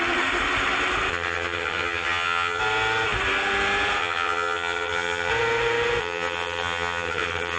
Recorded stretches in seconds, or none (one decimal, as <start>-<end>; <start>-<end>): 0.0-1.1; 2.6-4.0; 5.3-6.0